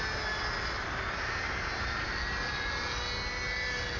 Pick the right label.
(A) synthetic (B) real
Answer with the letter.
B